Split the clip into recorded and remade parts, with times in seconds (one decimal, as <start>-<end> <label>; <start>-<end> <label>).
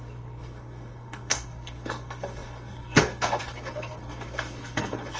0.0-5.2 remade